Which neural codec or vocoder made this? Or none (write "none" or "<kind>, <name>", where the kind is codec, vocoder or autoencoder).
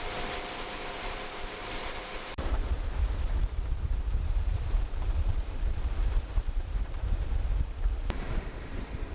vocoder, BigVGAN v2